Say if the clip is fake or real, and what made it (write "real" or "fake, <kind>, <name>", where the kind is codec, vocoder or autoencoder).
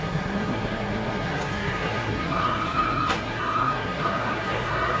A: fake, codec, SNAC